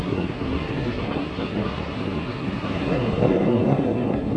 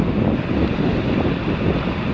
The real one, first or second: second